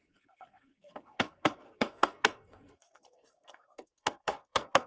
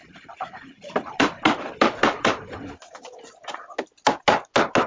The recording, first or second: second